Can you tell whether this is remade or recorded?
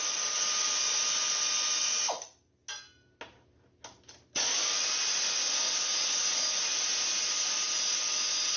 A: recorded